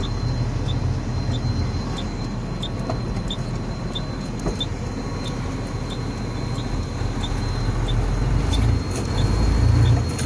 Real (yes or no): yes